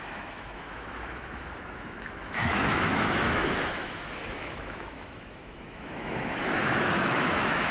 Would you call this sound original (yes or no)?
no